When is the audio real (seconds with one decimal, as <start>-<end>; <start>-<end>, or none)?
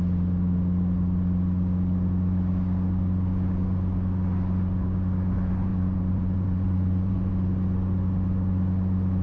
0.0-5.7; 7.3-9.2